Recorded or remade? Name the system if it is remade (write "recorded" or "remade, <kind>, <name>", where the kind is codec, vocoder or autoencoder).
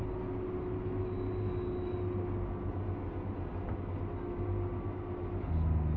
recorded